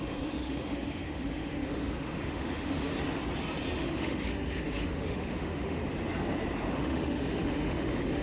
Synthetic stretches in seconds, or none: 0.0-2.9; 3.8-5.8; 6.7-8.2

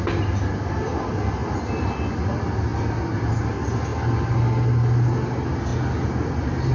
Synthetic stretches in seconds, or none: none